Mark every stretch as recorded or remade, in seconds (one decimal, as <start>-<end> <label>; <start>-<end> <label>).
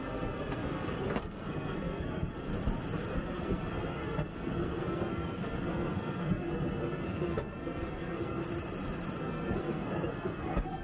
0.0-2.5 remade; 2.5-3.1 recorded; 3.1-8.4 remade; 8.4-9.2 recorded; 9.2-10.8 remade